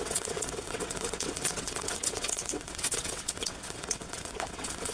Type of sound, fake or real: fake